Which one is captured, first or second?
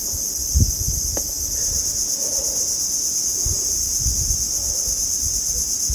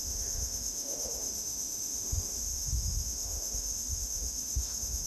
first